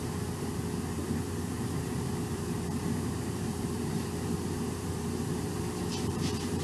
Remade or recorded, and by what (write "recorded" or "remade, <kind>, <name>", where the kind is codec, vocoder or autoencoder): remade, vocoder, BigVGAN v2